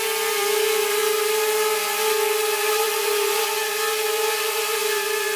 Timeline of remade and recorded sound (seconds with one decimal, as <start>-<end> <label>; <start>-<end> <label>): 0.0-1.0 remade; 1.0-2.7 recorded; 2.7-5.4 remade